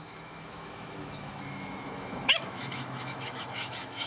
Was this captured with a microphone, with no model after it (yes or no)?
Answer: no